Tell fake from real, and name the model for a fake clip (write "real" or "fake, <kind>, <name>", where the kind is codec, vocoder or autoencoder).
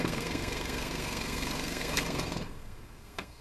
fake, codec, SNAC